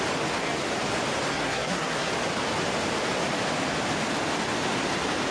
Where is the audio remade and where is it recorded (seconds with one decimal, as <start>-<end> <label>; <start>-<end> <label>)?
0.0-1.3 recorded; 1.3-2.1 remade; 2.1-5.3 recorded